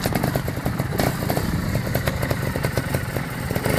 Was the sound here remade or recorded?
recorded